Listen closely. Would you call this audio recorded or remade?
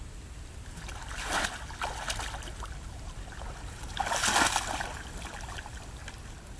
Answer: recorded